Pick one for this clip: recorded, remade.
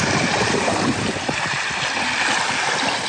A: remade